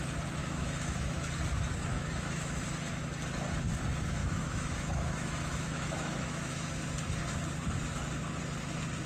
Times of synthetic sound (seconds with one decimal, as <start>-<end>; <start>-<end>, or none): 0.4-1.3; 1.9-2.6; 4.2-6.7